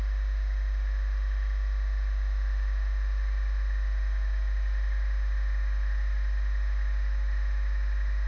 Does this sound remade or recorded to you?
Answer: recorded